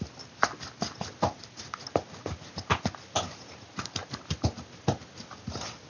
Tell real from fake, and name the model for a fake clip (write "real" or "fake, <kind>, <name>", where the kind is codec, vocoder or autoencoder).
real